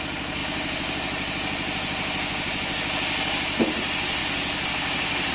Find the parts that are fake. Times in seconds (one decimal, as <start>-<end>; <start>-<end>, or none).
none